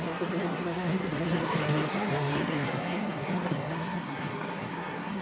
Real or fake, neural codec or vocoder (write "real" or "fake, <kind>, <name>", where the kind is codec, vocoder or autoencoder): fake, codec, SNAC